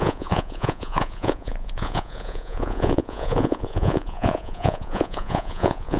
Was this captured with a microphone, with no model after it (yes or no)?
no